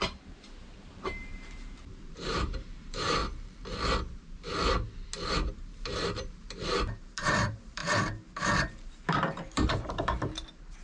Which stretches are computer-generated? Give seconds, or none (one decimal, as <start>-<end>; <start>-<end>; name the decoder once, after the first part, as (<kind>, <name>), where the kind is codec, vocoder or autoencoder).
0.0-3.2 (vocoder, BigVGAN v2); 5.5-10.8